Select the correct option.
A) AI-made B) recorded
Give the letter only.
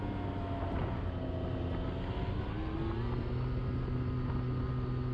B